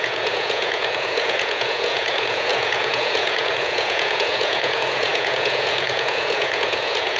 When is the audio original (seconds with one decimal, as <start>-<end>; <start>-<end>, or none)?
none